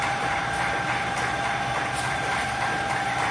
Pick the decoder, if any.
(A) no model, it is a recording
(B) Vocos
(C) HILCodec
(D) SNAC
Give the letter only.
A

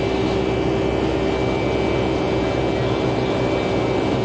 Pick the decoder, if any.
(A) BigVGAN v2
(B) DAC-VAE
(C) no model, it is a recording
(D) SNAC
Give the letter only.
C